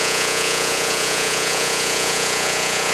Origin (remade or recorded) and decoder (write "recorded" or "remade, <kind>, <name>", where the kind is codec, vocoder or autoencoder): remade, vocoder, Vocos